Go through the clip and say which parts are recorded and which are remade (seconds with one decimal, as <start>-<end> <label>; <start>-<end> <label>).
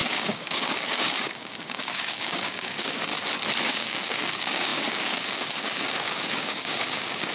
0.0-3.1 remade; 3.1-3.7 recorded; 3.7-7.3 remade